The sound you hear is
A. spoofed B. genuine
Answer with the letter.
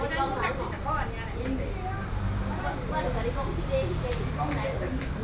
B